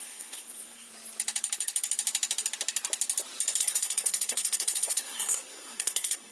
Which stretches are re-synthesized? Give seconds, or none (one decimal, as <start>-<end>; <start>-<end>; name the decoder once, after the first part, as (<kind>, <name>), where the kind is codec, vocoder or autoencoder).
0.0-0.9 (codec, SNAC); 3.6-6.3